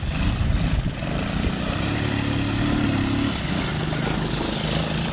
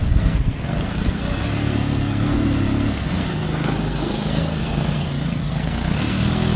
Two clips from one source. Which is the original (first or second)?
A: first